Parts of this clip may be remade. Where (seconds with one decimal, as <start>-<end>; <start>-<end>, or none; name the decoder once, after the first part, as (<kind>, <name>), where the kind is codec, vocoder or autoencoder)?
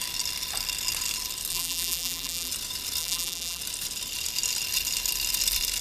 1.5-2.5 (vocoder, BigVGAN v2); 3.0-3.6